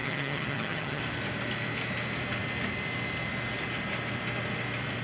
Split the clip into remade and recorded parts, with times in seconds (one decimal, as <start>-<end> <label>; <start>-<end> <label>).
0.0-1.0 remade; 1.0-5.0 recorded